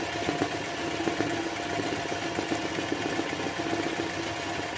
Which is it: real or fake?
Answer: real